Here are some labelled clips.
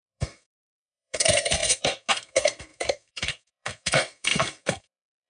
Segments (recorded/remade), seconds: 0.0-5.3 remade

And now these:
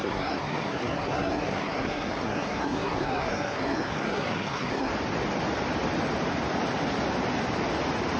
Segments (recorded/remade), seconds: 0.0-4.9 remade; 4.9-8.2 recorded